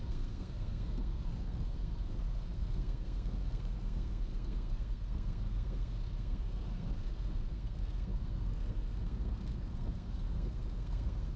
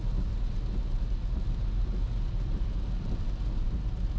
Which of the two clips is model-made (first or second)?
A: first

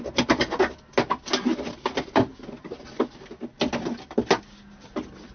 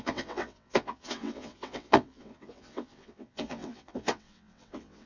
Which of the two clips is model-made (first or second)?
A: second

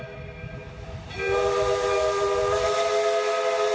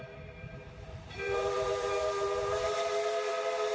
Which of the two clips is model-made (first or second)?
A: second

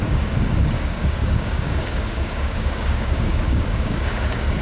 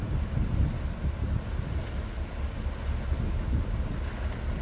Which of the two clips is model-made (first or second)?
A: first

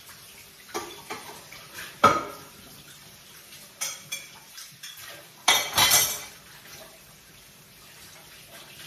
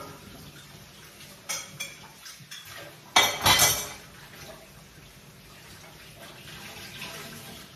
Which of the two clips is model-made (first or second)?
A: first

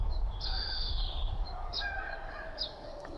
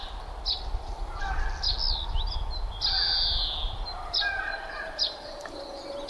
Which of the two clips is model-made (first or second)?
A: first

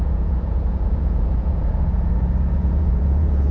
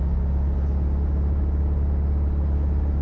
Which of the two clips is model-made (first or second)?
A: first